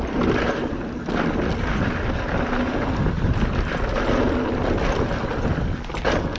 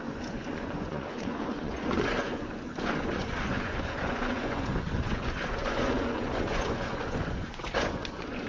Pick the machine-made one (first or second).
second